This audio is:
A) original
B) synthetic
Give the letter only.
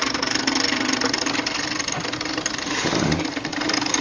A